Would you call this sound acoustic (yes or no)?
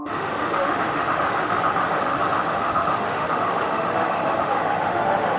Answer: no